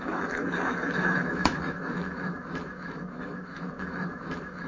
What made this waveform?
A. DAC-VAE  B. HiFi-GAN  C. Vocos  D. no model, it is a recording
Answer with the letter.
A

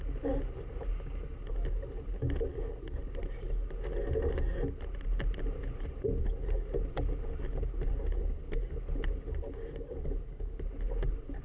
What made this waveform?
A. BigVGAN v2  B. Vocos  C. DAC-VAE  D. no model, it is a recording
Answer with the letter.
D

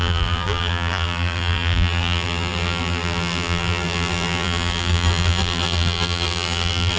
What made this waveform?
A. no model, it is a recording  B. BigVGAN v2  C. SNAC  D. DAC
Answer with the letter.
B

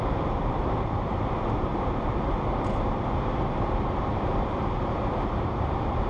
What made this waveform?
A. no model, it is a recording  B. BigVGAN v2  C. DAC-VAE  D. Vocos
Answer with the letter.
B